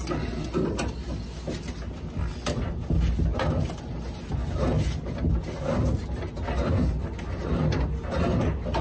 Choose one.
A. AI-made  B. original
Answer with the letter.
B